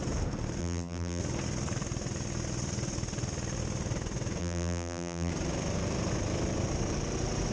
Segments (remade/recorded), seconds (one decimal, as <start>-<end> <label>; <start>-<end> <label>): 0.0-0.6 recorded; 0.6-1.2 remade; 1.2-4.4 recorded; 4.4-5.3 remade; 5.3-7.5 recorded